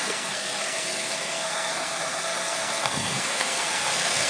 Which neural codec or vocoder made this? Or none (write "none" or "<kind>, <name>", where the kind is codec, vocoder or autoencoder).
codec, SNAC